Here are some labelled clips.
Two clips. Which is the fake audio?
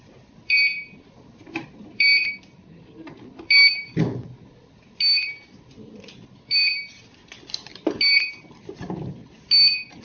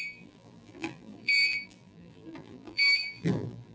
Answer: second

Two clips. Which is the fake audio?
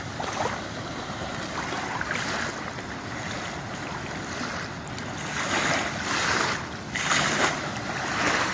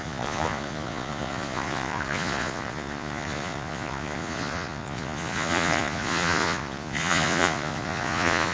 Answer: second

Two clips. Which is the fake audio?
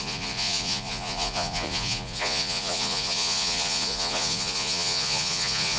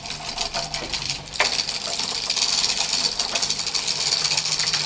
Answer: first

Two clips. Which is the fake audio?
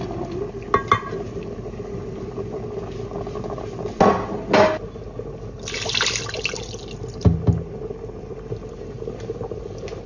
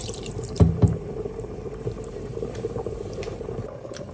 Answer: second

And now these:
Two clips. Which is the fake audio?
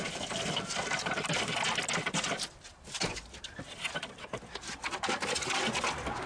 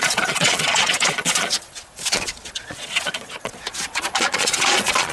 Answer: second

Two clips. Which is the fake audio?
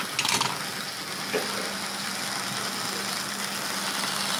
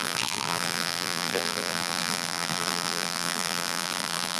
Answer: second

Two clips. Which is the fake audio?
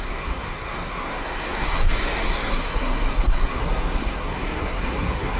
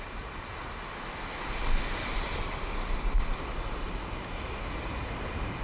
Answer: first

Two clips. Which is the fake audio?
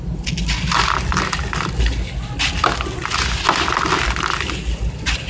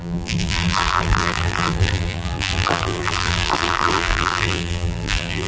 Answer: second